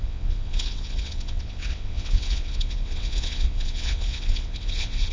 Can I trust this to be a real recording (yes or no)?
no